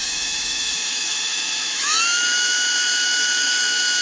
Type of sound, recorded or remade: remade